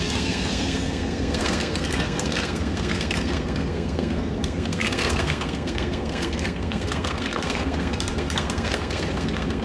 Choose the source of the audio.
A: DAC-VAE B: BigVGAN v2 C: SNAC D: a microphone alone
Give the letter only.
C